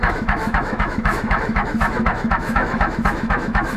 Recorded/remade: remade